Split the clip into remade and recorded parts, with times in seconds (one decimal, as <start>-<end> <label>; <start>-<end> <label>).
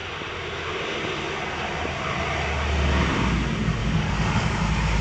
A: 0.0-3.8 recorded; 3.8-4.6 remade; 4.6-5.0 recorded